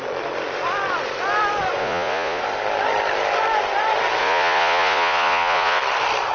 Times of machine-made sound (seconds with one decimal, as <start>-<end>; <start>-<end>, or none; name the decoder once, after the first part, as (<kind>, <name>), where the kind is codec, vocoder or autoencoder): 1.8-2.4 (vocoder, Vocos); 4.2-5.8